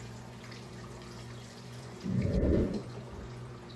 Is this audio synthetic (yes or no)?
yes